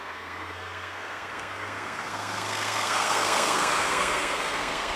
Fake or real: fake